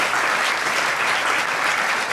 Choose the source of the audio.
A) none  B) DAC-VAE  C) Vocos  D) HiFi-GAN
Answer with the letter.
A